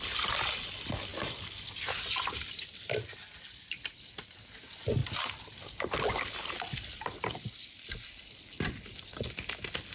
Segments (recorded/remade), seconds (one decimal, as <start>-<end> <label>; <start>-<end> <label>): 0.0-9.9 recorded